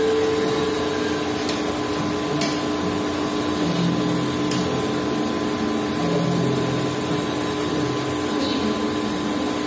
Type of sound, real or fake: real